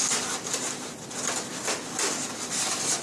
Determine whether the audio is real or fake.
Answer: real